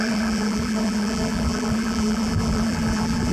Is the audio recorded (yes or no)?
no